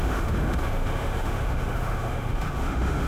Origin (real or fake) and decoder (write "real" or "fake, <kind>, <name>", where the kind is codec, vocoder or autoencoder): fake, autoencoder, DAC-VAE